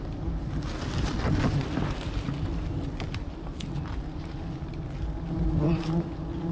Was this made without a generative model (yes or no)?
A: yes